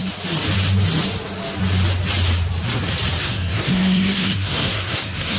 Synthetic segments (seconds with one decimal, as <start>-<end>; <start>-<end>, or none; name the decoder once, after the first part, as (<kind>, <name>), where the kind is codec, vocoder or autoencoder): 3.2-5.4 (codec, SNAC)